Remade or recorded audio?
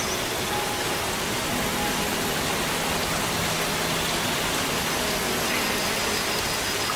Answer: recorded